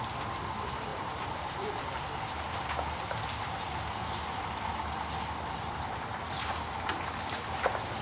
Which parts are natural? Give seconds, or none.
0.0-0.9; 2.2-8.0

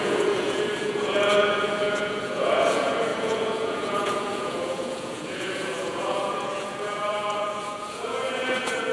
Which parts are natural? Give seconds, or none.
none

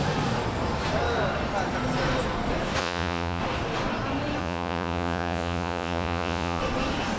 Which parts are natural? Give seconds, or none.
0.0-2.8; 3.4-4.4; 6.6-7.2

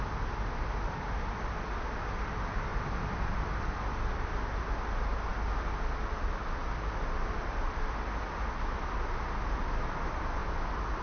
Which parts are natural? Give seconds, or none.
0.0-11.0

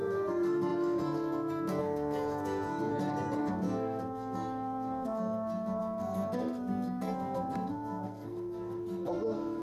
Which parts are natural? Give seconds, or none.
2.9-3.4

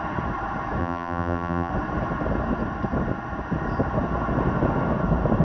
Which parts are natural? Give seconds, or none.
0.0-0.8; 1.7-5.4